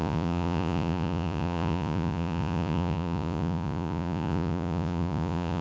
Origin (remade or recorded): remade